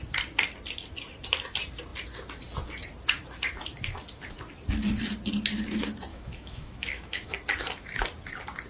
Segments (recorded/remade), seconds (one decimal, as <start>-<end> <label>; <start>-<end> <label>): 0.0-6.1 recorded; 6.1-7.3 remade; 7.3-8.7 recorded